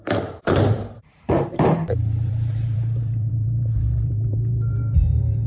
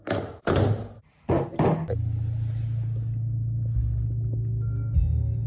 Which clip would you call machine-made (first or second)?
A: first